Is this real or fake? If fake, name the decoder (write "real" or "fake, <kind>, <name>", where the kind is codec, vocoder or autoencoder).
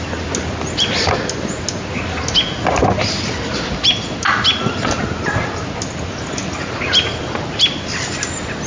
real